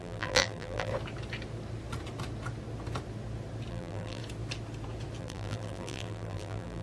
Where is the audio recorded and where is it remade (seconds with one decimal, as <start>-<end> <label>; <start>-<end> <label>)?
0.0-0.9 remade; 0.9-3.7 recorded; 3.7-4.2 remade; 4.2-5.2 recorded; 5.2-6.8 remade